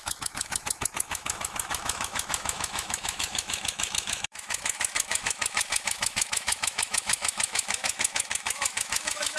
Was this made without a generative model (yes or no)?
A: no